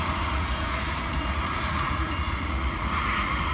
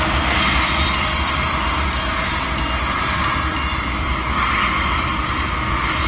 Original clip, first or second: second